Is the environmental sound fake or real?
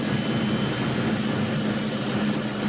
real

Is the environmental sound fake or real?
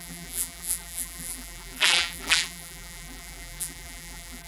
fake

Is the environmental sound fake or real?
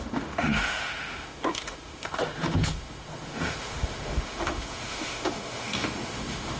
fake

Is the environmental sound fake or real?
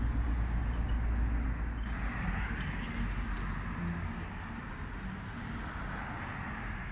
real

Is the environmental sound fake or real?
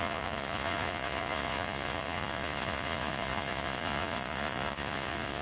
fake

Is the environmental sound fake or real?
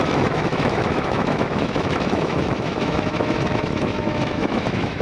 fake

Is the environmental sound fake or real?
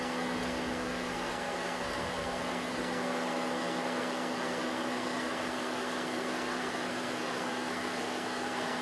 fake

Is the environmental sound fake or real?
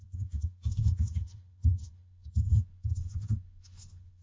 fake